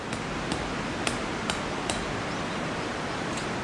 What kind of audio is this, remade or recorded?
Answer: recorded